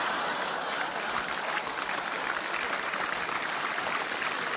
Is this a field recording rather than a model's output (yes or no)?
no